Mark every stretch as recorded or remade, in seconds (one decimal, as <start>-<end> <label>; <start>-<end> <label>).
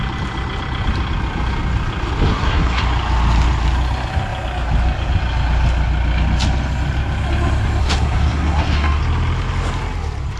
0.0-2.3 recorded; 2.3-2.8 remade; 2.8-7.8 recorded; 7.8-9.0 remade; 9.0-10.4 recorded